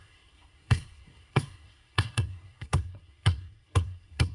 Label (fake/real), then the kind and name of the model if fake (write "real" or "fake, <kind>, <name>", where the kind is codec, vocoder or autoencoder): fake, codec, SNAC